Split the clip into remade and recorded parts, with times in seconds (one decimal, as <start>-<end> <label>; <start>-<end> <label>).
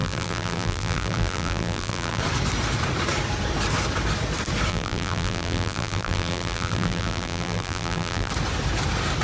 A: 0.0-2.2 remade; 2.2-4.7 recorded; 4.7-8.3 remade; 8.3-9.2 recorded